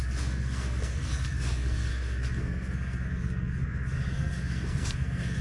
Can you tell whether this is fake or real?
fake